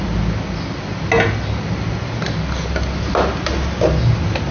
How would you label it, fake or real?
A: real